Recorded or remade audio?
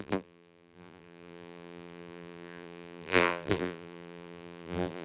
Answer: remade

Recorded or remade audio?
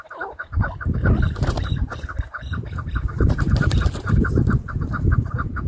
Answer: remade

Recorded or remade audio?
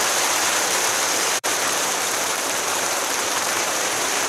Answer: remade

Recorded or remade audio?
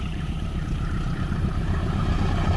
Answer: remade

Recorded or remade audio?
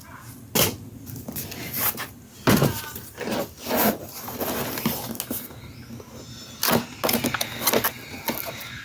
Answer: recorded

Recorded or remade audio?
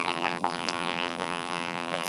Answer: remade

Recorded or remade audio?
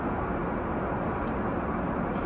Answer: recorded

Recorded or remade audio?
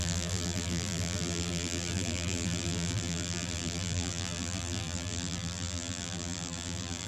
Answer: remade